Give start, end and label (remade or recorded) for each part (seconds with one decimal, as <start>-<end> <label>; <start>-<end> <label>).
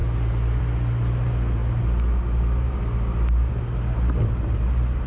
0.0-5.1 recorded